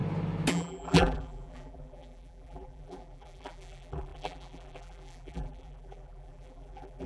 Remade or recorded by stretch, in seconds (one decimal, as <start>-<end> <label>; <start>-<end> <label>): 0.0-0.5 recorded; 0.5-7.1 remade